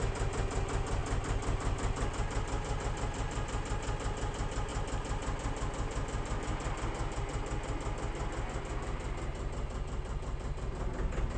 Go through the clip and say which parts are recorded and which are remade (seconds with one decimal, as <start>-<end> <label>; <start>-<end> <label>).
0.0-11.4 recorded